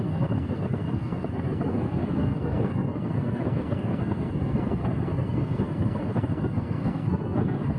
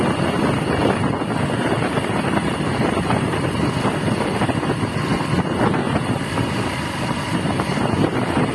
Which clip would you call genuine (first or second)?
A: second